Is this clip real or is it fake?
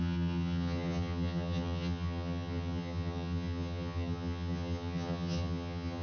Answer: fake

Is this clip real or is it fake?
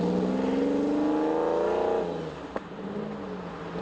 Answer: real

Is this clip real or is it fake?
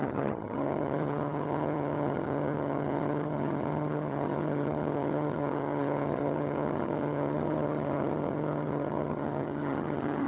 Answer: fake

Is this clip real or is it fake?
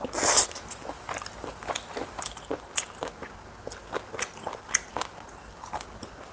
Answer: real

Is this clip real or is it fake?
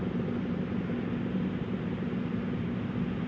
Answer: real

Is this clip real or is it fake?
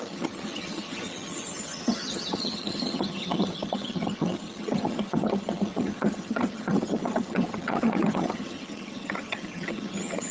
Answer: fake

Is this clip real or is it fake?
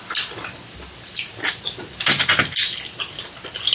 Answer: real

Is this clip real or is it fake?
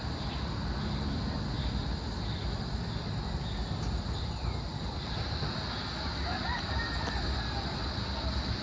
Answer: real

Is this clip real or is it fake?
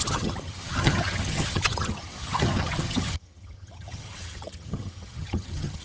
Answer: fake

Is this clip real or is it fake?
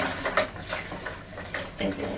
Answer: real